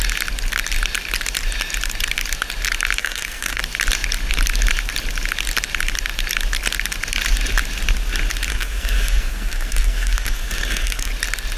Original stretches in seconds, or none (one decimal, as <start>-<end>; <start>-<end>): 0.0-3.0; 3.6-8.5; 11.1-11.6